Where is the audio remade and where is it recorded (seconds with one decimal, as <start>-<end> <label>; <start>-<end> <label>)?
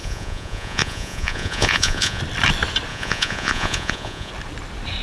0.0-2.2 remade; 2.2-2.9 recorded; 2.9-4.3 remade; 4.3-5.0 recorded